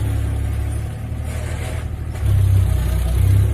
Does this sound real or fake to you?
real